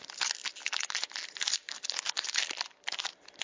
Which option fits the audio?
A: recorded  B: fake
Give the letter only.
A